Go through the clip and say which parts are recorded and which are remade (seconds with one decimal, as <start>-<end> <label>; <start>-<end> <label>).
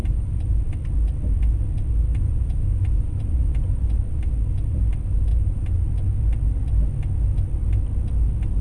0.0-0.6 remade; 0.6-2.1 recorded; 2.1-4.0 remade; 4.0-5.3 recorded; 5.3-5.8 remade; 5.8-8.6 recorded